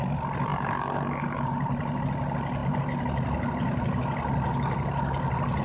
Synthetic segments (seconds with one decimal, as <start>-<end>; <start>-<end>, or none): 0.5-2.1